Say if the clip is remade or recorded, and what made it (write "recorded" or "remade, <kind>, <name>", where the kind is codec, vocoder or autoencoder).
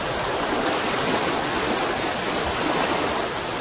recorded